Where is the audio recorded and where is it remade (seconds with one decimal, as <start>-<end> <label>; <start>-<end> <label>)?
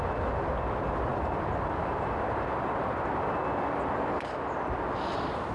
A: 0.0-5.5 recorded